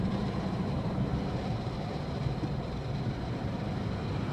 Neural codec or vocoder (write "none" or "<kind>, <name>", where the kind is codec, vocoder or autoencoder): vocoder, BigVGAN v2